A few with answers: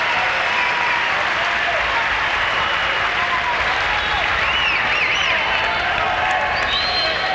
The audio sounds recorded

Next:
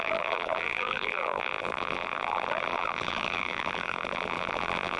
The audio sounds remade